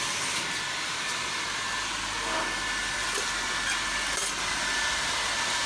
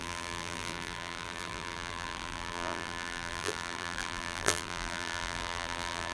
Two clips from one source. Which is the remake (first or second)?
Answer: second